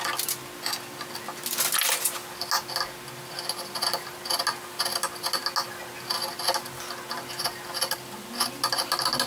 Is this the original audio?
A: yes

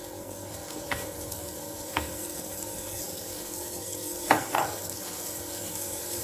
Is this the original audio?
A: no